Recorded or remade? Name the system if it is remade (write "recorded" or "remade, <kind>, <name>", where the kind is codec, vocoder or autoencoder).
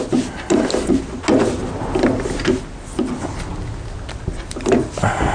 recorded